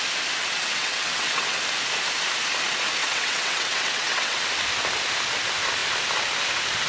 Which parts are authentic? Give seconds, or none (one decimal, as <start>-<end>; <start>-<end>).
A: 0.0-0.4; 1.6-3.0; 4.4-6.9